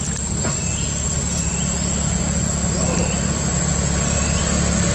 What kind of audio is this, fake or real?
real